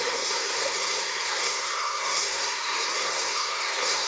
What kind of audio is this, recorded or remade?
remade